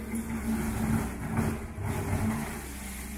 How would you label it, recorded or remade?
recorded